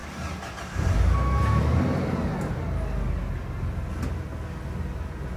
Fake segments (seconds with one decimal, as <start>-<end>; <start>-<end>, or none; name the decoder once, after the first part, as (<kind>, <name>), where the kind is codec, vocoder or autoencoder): none